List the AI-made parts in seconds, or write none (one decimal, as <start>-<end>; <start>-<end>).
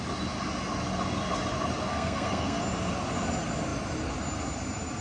1.9-2.6